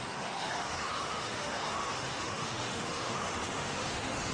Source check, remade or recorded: remade